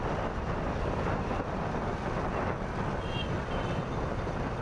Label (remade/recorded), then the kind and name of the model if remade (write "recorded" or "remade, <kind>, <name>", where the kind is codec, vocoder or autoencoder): recorded